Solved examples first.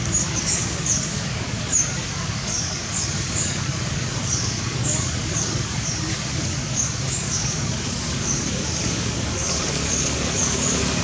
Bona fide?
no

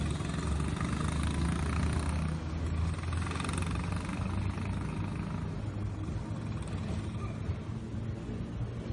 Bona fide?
yes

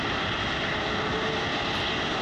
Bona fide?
yes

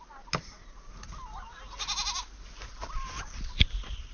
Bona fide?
yes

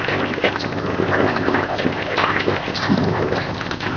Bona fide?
no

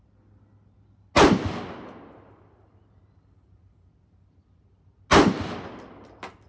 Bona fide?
yes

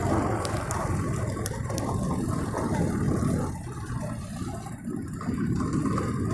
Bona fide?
yes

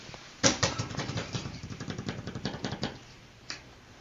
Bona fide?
no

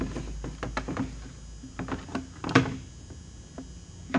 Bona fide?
yes